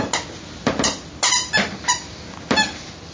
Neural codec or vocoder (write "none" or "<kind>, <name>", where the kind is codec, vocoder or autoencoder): none